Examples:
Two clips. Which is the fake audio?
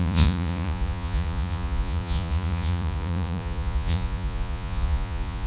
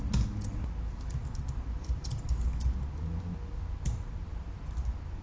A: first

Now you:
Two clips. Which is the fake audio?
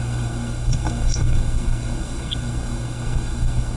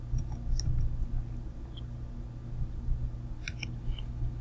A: first